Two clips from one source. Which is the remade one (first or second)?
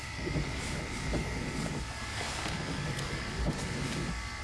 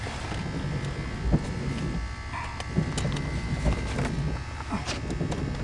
first